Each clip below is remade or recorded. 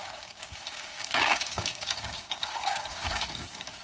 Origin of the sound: remade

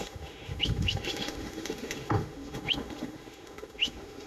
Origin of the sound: remade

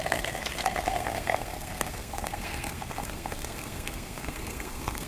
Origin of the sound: remade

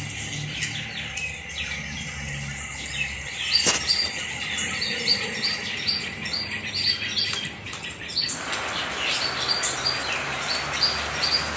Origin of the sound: recorded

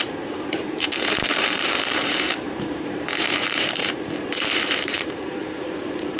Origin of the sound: remade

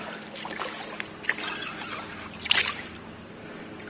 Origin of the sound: recorded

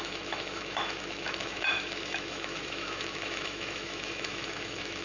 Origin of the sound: remade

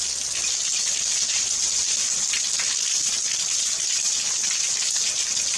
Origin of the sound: recorded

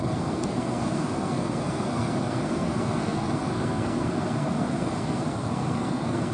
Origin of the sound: remade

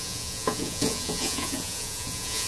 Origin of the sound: remade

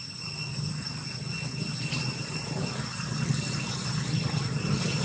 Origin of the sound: recorded